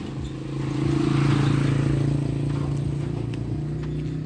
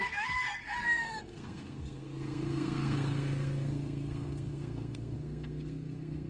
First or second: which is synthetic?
second